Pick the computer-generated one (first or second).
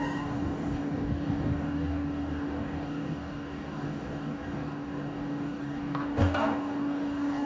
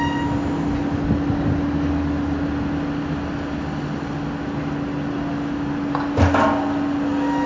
first